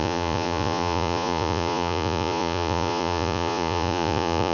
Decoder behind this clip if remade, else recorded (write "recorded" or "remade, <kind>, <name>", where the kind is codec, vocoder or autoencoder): remade, vocoder, Vocos